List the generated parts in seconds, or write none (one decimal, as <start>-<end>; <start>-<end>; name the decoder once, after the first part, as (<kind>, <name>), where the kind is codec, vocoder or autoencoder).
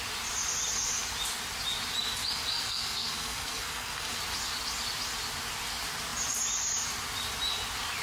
2.5-4.2 (codec, SNAC)